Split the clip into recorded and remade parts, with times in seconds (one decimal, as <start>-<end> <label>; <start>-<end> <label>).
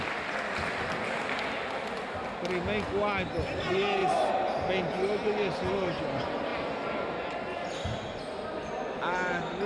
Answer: 0.0-9.7 recorded